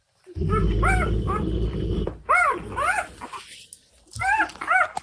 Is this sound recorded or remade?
recorded